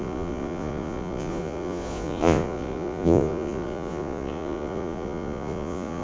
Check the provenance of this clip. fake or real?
fake